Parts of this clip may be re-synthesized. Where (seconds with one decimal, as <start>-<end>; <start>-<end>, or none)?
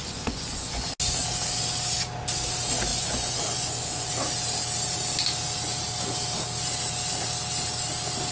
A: 0.0-0.9; 2.9-4.1